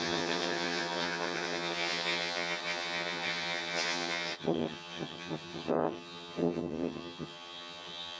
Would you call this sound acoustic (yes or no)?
no